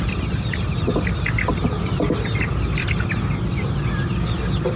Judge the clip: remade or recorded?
recorded